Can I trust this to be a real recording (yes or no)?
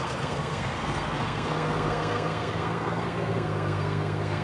no